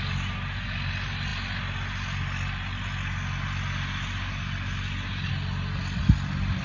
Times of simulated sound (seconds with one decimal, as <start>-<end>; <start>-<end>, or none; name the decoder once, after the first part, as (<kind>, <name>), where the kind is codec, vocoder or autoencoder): none

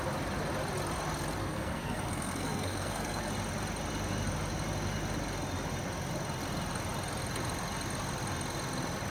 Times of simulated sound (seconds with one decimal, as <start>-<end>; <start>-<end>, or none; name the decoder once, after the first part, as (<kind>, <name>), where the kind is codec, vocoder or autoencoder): 1.4-3.3 (codec, SNAC)

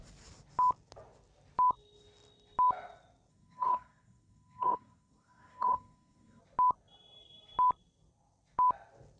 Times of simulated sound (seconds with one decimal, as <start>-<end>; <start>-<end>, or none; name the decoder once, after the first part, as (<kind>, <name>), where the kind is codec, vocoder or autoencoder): 3.3-6.4 (codec, SNAC)

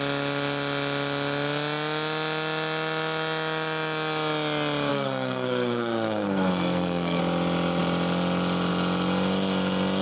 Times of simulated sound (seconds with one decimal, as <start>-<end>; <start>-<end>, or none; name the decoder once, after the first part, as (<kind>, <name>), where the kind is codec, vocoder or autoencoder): 4.9-7.2 (codec, SNAC)